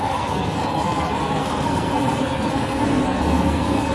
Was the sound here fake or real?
fake